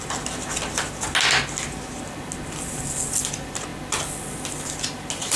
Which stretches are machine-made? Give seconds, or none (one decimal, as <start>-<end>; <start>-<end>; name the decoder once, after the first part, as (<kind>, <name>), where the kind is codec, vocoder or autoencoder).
none